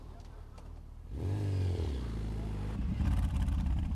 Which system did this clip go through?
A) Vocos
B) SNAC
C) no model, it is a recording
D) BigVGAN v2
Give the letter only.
D